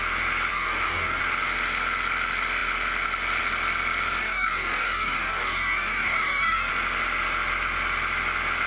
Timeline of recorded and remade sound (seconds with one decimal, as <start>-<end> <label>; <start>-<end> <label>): 0.0-0.5 recorded; 0.5-1.2 remade; 1.2-4.2 recorded; 4.2-6.7 remade; 6.7-8.7 recorded